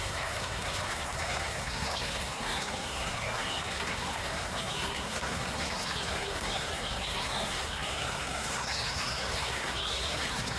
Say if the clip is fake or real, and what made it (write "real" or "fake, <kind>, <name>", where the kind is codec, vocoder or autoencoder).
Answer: fake, codec, SNAC